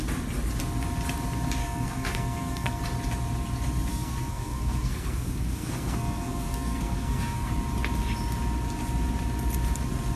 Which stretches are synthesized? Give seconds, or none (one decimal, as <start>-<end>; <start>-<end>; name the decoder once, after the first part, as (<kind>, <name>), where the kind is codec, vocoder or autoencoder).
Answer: 1.6-2.8 (codec, SNAC); 3.9-7.5